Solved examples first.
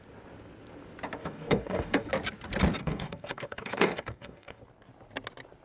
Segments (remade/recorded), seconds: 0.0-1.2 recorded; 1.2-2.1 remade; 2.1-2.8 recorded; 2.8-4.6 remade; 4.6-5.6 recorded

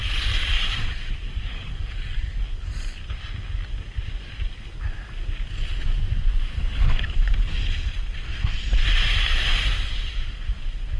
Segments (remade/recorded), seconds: 0.0-1.3 recorded; 1.3-2.4 remade; 2.4-6.6 recorded; 6.6-7.3 remade; 7.3-11.0 recorded

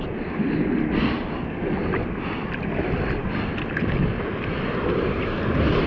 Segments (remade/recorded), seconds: 0.0-5.9 recorded

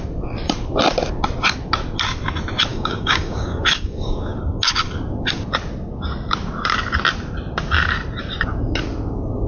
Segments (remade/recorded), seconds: 0.0-2.7 recorded; 2.7-4.4 remade; 4.4-9.5 recorded

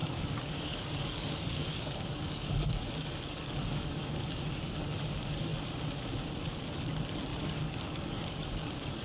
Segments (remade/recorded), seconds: 0.0-5.5 remade; 5.5-6.6 recorded; 6.6-9.0 remade

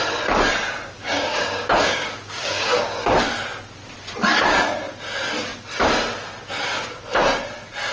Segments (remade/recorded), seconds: 0.0-1.0 recorded; 1.0-3.1 remade; 3.1-7.9 recorded

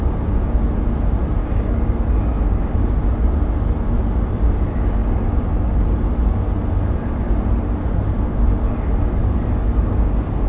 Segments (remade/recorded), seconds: 0.0-1.4 recorded; 1.4-2.1 remade; 2.1-9.2 recorded; 9.2-10.5 remade

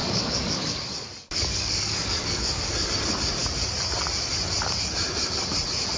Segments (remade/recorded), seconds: 0.0-2.7 remade; 2.7-6.0 recorded